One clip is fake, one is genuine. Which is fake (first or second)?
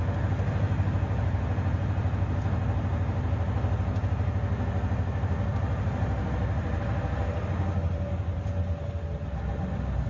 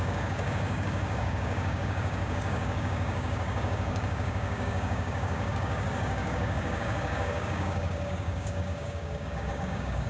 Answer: second